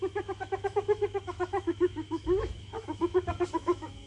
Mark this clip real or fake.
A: fake